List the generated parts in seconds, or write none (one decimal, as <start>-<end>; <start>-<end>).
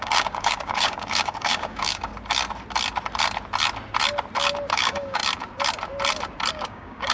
0.0-2.1; 4.7-5.2; 6.5-7.1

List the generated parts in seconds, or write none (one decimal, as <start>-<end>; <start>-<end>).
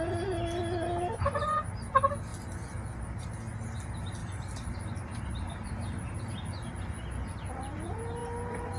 4.2-6.2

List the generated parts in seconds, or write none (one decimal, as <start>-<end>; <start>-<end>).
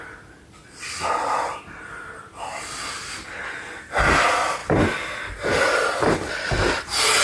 none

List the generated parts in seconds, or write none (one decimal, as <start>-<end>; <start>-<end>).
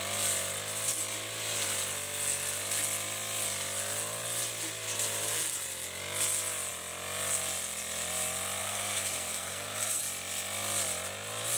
8.6-10.0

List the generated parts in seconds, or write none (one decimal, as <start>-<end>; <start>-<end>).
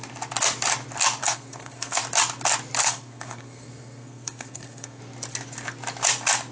1.2-2.0; 2.8-5.0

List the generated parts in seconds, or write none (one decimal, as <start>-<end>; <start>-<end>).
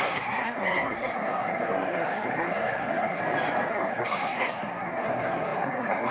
0.0-3.2; 3.7-6.1